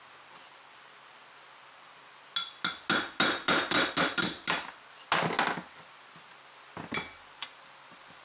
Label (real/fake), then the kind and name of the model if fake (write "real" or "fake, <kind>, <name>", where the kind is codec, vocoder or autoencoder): real